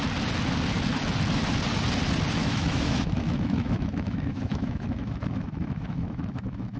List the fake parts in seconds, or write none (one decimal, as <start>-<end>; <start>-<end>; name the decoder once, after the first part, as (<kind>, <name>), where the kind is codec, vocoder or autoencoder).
2.4-6.8 (autoencoder, DAC-VAE)